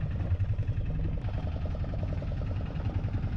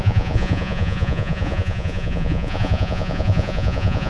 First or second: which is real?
first